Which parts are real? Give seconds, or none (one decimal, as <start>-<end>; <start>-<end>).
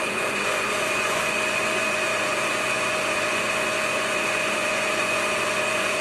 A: none